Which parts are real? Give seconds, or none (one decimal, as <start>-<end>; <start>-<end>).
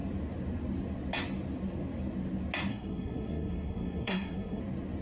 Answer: 0.0-2.7; 4.6-5.0